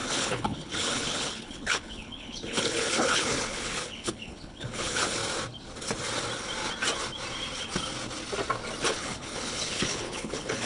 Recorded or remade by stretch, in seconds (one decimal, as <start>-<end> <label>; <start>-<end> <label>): 0.0-5.2 remade; 5.2-8.8 recorded; 8.8-10.7 remade